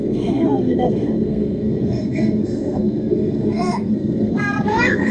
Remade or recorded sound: remade